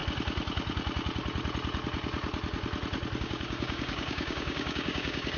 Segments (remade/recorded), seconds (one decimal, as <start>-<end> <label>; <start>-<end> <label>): 0.0-3.2 recorded; 3.2-5.4 remade